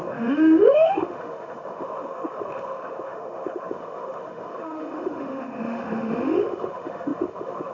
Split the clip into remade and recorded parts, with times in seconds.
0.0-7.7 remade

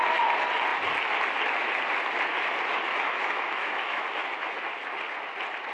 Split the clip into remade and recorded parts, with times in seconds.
0.0-2.7 recorded; 2.7-4.6 remade; 4.6-5.7 recorded